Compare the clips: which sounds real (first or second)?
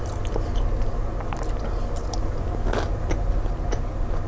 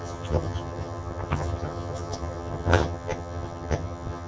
first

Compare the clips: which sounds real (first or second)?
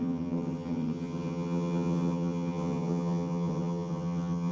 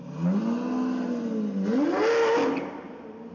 second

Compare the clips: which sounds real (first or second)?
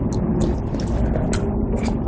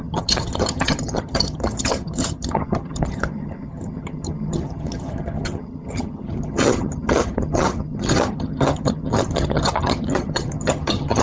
first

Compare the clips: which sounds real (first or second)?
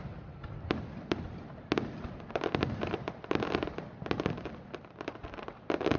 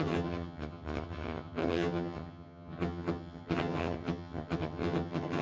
first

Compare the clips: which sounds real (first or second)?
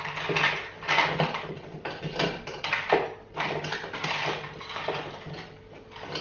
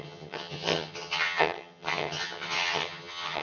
first